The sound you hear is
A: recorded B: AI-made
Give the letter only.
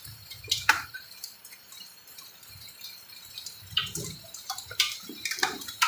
B